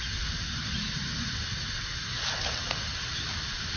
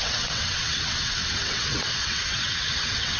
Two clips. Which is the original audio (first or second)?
first